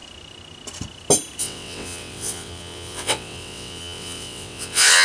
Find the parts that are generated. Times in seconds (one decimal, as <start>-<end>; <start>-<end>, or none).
1.4-5.0